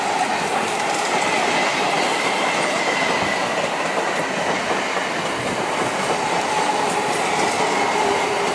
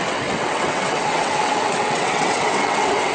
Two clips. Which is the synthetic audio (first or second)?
second